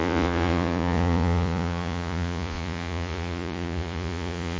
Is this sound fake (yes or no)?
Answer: yes